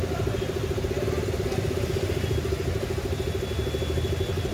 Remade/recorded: recorded